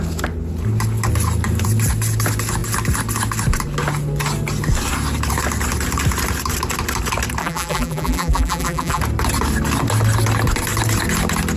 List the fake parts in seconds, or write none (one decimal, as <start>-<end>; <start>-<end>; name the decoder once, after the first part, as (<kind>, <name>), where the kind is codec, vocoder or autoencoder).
7.4-9.0 (vocoder, BigVGAN v2)